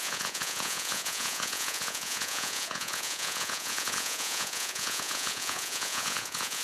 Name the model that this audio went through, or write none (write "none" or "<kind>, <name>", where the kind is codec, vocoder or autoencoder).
vocoder, Vocos